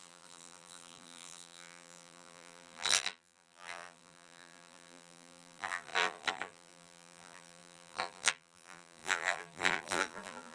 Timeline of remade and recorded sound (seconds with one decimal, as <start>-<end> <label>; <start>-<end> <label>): 0.0-10.5 remade